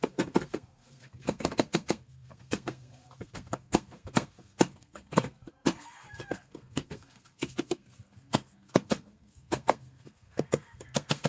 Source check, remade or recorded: remade